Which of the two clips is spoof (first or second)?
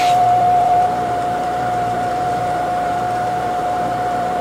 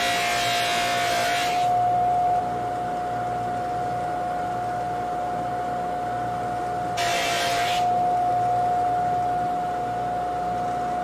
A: first